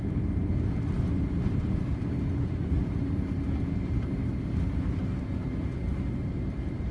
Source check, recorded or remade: recorded